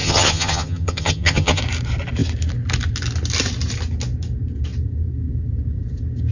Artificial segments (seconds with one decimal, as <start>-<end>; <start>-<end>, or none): 0.0-1.6